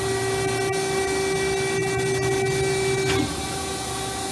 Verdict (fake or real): real